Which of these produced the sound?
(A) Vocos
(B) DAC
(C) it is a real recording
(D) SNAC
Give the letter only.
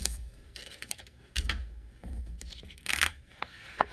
D